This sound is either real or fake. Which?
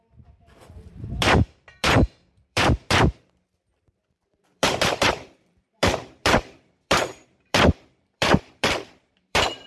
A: fake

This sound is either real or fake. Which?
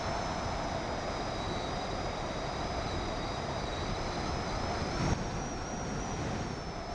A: real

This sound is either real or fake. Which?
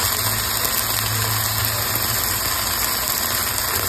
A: real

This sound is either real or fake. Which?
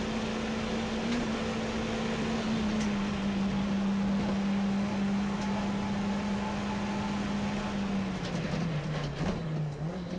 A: real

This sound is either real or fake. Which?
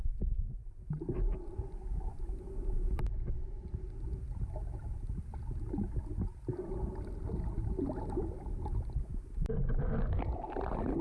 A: real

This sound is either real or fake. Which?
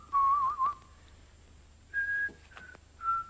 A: real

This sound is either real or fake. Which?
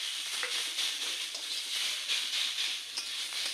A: real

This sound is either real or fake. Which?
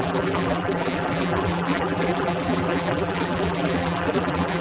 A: fake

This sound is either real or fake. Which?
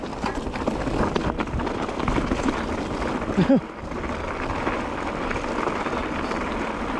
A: real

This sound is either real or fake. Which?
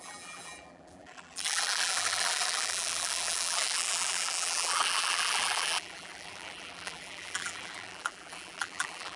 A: fake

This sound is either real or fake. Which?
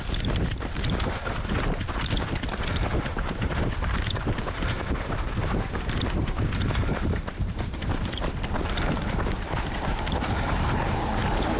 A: fake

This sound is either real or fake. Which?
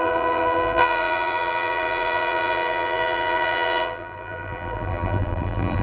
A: fake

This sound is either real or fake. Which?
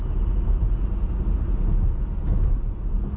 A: real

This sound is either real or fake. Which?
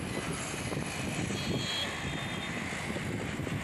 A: real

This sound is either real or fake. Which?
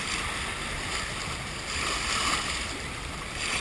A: real